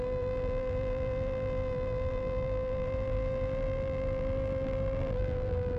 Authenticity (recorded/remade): remade